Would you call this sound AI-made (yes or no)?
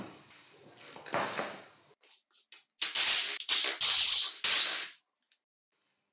no